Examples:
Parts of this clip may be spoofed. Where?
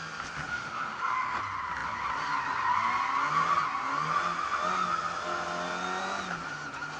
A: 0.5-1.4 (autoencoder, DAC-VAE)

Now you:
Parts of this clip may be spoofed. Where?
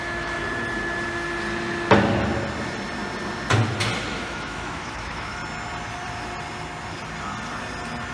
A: 0.0-0.4 (autoencoder, DAC-VAE); 4.1-5.4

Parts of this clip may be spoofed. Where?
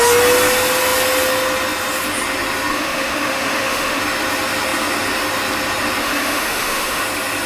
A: 2.7-4.0 (autoencoder, DAC-VAE); 6.0-7.0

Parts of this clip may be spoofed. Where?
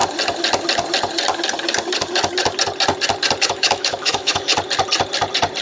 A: 3.4-4.5 (autoencoder, DAC-VAE)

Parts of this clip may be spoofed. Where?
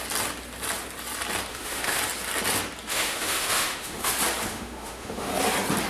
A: 1.5-2.0 (autoencoder, DAC-VAE); 2.9-4.1; 4.5-5.3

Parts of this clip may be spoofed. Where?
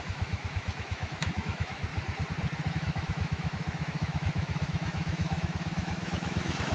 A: 0.0-1.9 (autoencoder, DAC-VAE); 2.7-6.7